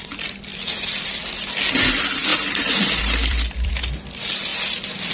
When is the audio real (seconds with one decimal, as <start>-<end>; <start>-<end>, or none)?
0.0-0.5; 1.4-2.3; 3.7-5.1

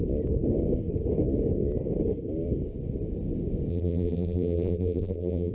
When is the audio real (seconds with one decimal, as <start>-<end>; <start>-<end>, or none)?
0.0-3.7

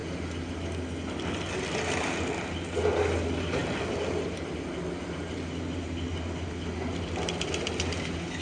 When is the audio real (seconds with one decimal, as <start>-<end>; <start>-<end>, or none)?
0.0-8.4

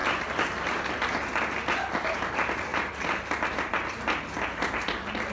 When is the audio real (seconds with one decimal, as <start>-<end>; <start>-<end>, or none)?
0.8-2.7; 3.7-5.3

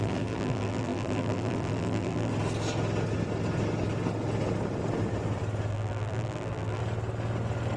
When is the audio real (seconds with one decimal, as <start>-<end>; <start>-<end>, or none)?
2.3-5.7; 6.8-7.8

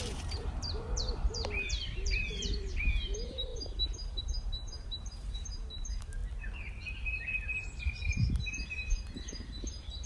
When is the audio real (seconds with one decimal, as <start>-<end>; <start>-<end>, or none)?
6.2-7.8

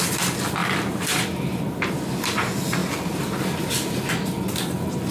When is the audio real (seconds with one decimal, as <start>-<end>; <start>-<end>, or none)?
0.0-2.8; 3.3-5.1